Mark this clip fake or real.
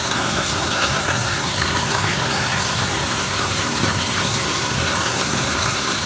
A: fake